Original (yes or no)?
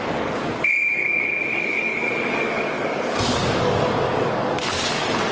no